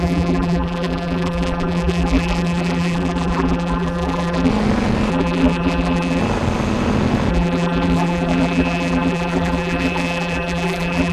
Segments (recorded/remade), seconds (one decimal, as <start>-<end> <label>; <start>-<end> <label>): 0.0-4.5 remade; 4.5-5.1 recorded; 5.1-6.2 remade; 6.2-7.3 recorded; 7.3-11.1 remade